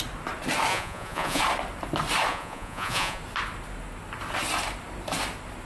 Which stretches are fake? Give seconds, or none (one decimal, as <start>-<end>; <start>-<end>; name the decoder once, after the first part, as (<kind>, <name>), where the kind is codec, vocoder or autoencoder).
0.7-1.4 (vocoder, Vocos); 2.3-3.2